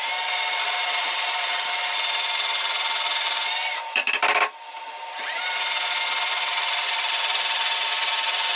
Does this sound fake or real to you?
fake